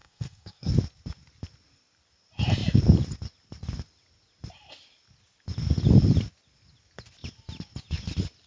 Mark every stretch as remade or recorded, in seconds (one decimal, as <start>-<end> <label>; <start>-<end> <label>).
0.0-0.7 remade; 0.7-8.5 recorded